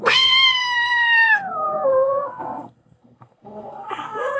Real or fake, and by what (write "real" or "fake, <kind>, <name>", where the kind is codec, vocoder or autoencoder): fake, codec, SNAC